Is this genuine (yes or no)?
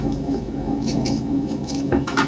no